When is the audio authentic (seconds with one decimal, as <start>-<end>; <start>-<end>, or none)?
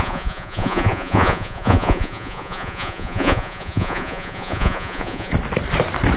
5.3-6.2